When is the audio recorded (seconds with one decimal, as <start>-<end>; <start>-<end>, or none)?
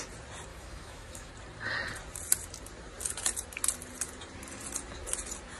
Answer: 0.0-0.5; 1.3-5.6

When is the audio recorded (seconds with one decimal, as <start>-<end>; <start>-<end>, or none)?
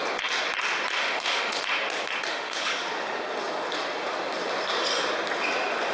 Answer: 0.0-1.0; 1.6-2.3; 2.7-5.9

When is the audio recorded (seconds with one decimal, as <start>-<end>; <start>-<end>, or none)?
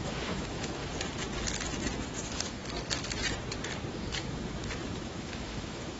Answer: 0.8-1.6; 2.6-3.9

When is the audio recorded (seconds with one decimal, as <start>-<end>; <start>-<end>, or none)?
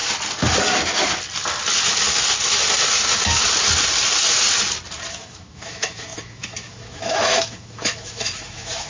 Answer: 0.0-5.1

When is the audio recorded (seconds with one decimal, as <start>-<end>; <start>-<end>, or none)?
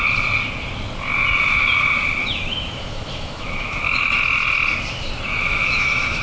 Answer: 0.0-2.2; 4.2-5.4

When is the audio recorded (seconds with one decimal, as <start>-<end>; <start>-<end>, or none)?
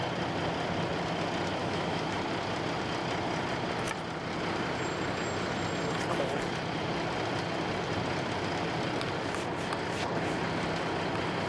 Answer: 0.0-1.6; 2.2-11.5